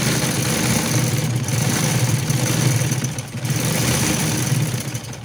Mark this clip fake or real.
real